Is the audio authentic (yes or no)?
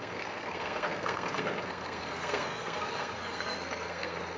no